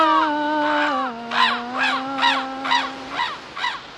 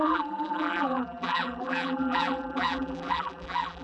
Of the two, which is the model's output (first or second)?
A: second